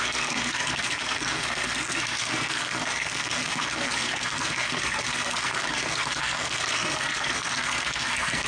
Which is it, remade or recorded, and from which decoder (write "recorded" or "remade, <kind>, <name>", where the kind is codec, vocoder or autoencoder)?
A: remade, codec, SNAC